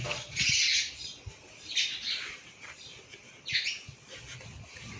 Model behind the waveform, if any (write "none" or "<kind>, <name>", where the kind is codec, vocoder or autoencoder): none